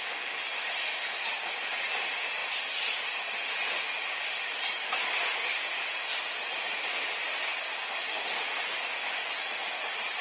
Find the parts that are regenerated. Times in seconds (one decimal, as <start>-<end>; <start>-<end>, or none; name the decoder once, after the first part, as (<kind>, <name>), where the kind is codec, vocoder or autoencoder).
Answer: 2.4-3.0 (vocoder, BigVGAN v2)